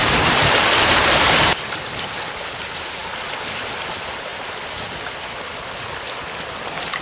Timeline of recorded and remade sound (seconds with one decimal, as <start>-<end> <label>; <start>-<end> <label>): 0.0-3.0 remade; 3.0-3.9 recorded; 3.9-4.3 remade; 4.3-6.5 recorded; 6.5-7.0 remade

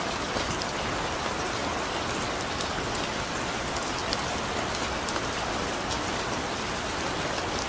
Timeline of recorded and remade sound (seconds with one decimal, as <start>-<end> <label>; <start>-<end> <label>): 0.0-7.7 recorded

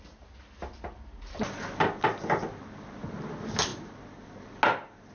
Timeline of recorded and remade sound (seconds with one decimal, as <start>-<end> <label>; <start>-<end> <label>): 0.0-5.1 recorded

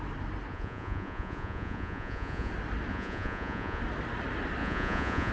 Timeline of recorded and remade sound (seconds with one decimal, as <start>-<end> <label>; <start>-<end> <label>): 0.0-0.5 recorded; 0.5-2.5 remade; 2.5-2.9 recorded; 2.9-3.8 remade; 3.8-4.6 recorded; 4.6-5.3 remade